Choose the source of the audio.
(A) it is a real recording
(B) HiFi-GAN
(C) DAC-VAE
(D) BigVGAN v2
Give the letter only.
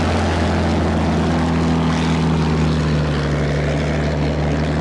A